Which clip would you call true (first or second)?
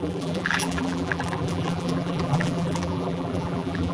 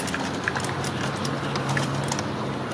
second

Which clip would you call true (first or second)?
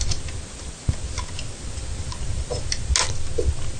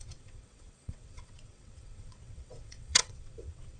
first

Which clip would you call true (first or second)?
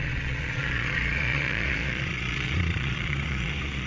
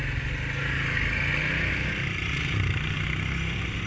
second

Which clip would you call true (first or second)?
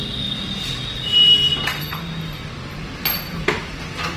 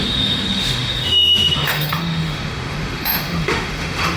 first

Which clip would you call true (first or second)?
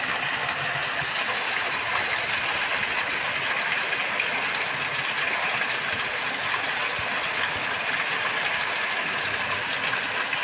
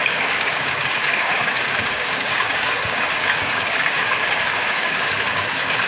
first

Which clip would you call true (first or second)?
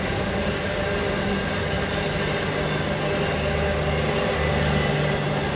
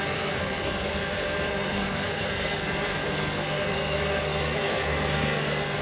first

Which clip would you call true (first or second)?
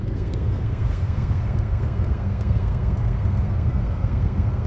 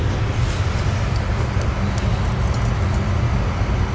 second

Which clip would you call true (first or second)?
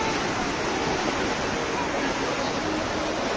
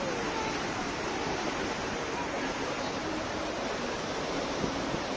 first